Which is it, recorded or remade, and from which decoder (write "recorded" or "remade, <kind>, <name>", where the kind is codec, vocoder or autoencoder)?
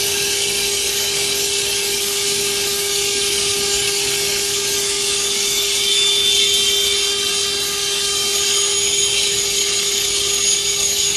remade, codec, DAC